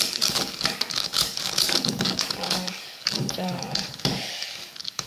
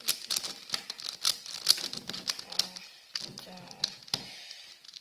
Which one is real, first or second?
second